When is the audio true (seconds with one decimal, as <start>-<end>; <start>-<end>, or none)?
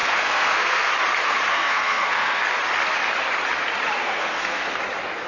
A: 0.9-1.5; 2.4-4.0; 4.8-5.3